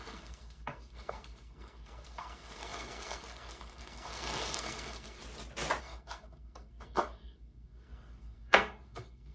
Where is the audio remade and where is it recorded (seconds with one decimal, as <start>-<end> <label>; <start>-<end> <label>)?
0.0-5.2 remade; 5.2-5.8 recorded; 5.8-9.3 remade